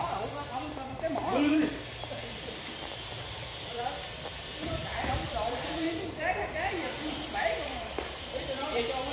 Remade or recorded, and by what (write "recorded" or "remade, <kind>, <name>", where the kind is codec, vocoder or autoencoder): remade, vocoder, BigVGAN v2